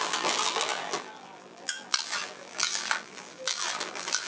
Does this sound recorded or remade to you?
remade